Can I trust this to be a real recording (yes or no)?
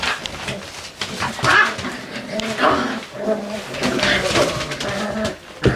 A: yes